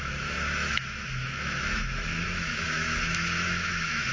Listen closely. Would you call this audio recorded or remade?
remade